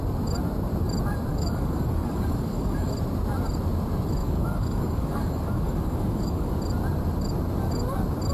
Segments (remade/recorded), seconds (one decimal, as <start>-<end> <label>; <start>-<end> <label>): 0.0-1.3 recorded; 1.3-2.9 remade; 2.9-4.2 recorded; 4.2-6.5 remade; 6.5-8.3 recorded